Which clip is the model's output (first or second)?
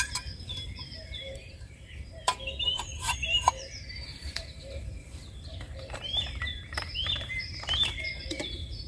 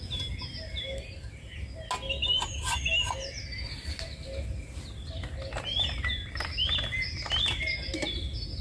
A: first